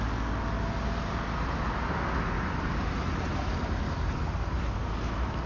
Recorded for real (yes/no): yes